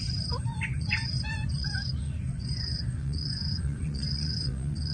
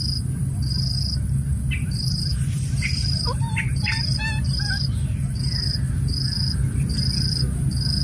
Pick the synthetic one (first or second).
first